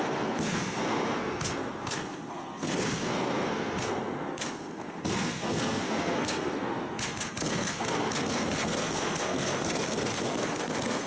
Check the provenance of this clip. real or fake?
fake